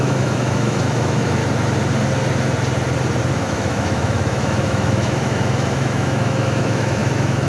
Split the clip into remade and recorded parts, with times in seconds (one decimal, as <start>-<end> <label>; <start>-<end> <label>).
0.0-1.4 remade; 1.4-3.3 recorded; 3.3-7.5 remade